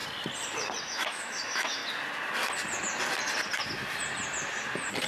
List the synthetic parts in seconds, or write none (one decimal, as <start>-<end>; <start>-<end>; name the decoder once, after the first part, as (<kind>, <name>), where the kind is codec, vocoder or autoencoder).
0.8-1.8 (autoencoder, DAC-VAE)